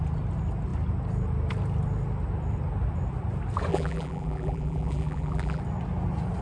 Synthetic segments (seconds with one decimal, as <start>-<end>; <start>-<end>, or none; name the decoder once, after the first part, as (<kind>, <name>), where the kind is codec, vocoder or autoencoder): 3.7-5.6 (vocoder, BigVGAN v2)